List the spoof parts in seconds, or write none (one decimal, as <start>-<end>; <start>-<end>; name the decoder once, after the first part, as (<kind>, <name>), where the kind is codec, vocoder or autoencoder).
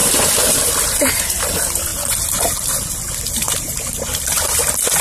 0.0-1.9 (vocoder, BigVGAN v2)